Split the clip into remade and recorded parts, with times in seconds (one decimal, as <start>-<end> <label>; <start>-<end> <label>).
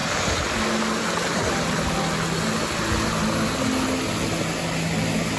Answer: 0.0-5.4 recorded